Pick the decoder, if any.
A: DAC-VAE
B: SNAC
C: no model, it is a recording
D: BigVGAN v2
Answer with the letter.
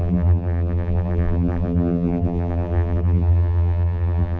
D